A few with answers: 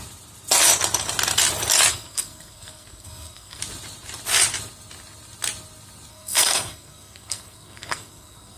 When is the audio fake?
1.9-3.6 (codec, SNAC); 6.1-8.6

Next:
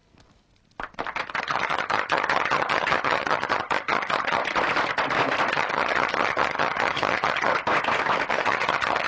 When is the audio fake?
1.4-4.4 (vocoder, HiFi-GAN); 5.5-7.5; 8.3-9.1